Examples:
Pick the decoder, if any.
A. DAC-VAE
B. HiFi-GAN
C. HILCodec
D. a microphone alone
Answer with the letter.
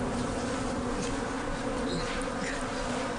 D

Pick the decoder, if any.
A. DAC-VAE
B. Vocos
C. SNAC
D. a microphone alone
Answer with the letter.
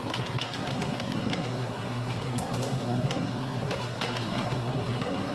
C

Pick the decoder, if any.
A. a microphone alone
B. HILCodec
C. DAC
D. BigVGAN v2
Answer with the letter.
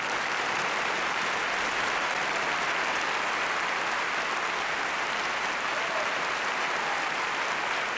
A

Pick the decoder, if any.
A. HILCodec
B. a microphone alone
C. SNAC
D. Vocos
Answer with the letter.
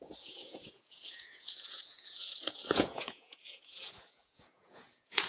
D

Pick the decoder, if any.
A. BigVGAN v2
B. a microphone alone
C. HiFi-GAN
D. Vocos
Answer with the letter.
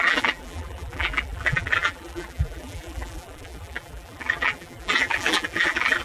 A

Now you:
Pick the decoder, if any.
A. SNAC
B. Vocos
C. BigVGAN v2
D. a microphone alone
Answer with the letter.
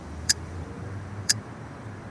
C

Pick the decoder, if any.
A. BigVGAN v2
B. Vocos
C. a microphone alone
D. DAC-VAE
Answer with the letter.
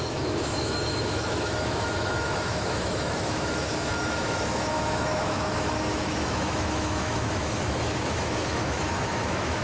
D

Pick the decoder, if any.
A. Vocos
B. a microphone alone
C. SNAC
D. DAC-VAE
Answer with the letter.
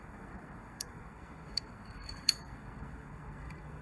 C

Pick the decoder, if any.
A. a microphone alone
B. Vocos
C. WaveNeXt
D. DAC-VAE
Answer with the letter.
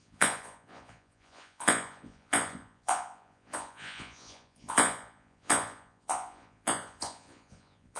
B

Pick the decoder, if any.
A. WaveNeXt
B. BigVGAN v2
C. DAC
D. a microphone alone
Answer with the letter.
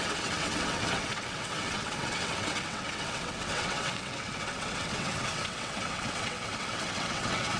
A